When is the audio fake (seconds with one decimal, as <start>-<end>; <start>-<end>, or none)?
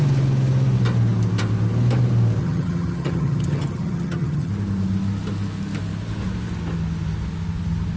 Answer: 2.4-4.5